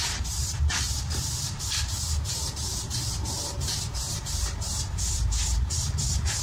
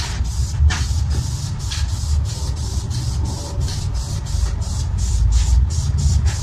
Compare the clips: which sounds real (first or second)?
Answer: second